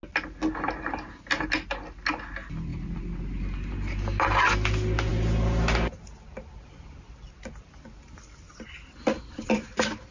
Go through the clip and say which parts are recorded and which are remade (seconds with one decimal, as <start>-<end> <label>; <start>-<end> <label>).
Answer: 0.0-10.1 recorded